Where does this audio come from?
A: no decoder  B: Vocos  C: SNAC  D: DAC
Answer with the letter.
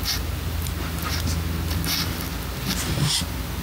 A